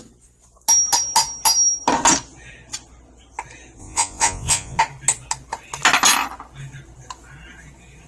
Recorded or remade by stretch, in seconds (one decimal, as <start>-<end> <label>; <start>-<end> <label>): 0.0-3.8 recorded; 3.8-4.8 remade; 4.8-8.1 recorded